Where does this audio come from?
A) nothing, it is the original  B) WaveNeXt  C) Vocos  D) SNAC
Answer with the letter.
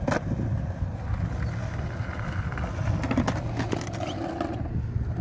A